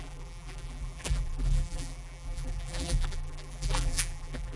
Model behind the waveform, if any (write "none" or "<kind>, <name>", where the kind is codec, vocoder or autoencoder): vocoder, BigVGAN v2